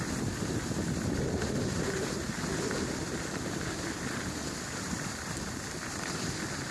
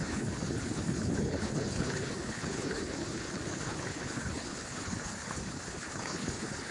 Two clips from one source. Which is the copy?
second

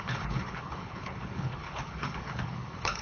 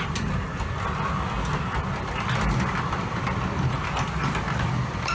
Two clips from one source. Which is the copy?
first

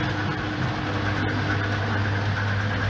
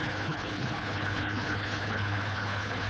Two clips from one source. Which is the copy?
second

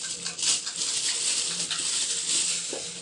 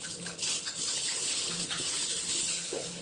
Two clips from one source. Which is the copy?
second